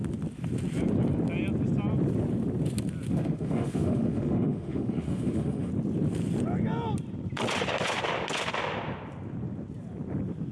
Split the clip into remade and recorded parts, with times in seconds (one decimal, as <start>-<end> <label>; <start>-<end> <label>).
0.0-3.1 recorded; 3.1-5.7 remade; 5.7-10.5 recorded